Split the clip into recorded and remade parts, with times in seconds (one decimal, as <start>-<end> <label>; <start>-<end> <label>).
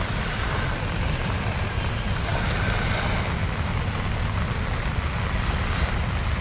0.0-6.4 recorded